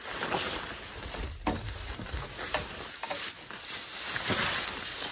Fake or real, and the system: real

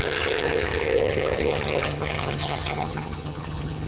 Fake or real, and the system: fake, vocoder, HiFi-GAN